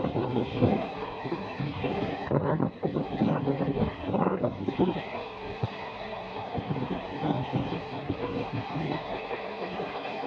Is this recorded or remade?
remade